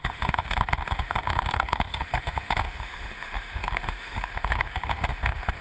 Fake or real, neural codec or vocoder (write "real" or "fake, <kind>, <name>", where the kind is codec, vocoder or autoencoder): fake, autoencoder, DAC-VAE